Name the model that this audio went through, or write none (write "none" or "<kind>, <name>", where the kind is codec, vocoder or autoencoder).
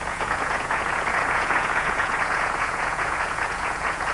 vocoder, Vocos